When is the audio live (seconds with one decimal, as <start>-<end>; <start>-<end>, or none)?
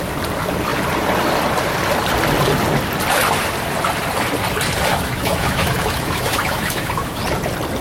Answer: 0.0-4.9; 7.2-7.8